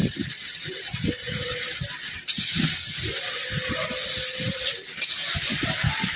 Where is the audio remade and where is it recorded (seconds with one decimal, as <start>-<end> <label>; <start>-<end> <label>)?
0.0-6.2 recorded